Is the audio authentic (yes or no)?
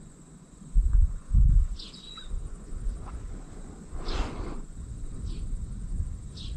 no